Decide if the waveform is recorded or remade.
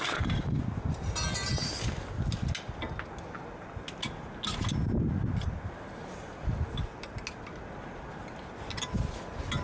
recorded